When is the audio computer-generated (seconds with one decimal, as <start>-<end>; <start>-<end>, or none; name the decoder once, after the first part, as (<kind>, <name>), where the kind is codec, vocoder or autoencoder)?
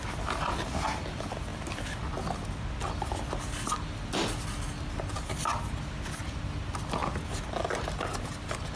none